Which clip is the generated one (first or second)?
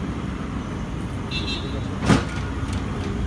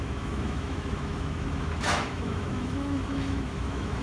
second